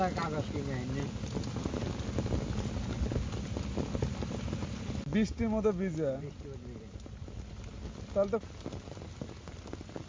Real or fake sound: real